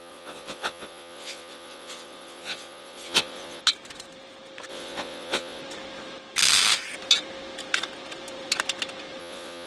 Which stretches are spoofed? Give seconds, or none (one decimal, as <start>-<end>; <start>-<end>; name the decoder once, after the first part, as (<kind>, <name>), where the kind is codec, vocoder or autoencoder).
0.0-3.6 (vocoder, Vocos); 4.7-5.6; 9.2-9.7